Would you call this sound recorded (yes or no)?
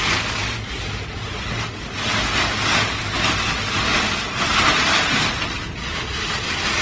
yes